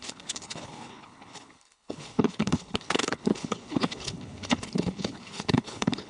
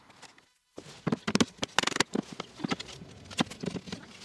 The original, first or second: second